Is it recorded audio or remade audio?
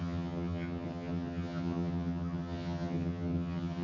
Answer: remade